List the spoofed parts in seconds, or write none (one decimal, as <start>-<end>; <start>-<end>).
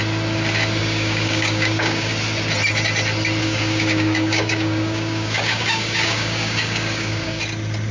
0.8-2.1; 3.4-7.4